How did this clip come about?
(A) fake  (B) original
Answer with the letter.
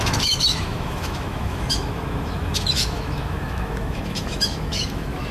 A